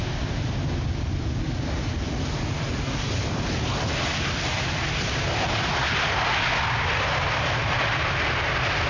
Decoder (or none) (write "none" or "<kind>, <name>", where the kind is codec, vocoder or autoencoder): none